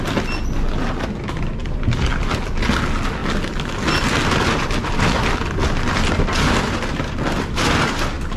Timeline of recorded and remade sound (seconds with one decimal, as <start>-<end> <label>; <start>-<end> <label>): 0.0-1.6 recorded; 1.6-2.5 remade; 2.5-8.4 recorded